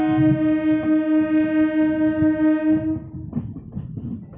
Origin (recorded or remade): recorded